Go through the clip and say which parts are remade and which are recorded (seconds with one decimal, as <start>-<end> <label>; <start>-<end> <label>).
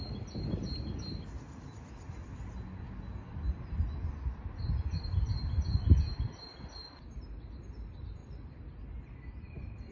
0.0-9.9 recorded